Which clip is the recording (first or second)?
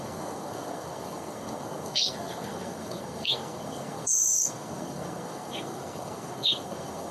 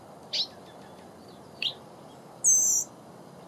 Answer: second